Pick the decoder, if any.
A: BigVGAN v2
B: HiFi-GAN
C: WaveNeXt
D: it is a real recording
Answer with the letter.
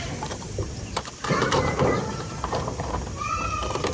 A